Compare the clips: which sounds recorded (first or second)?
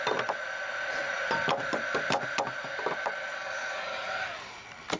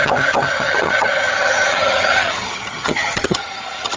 first